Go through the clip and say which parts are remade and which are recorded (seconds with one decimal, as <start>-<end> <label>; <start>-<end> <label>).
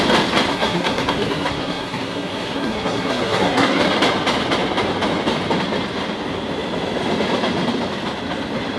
0.0-0.5 recorded; 0.5-3.8 remade; 3.8-8.8 recorded